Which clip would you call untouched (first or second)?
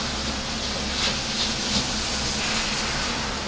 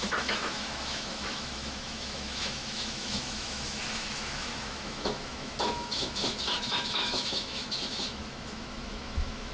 first